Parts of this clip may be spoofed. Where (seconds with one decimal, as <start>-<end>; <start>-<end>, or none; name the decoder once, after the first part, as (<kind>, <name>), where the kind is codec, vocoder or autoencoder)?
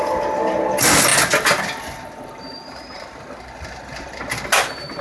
none